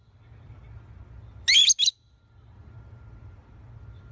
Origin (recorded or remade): recorded